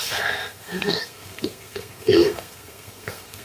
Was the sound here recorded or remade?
remade